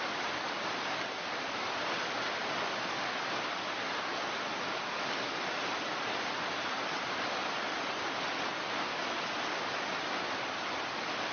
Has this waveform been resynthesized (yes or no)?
no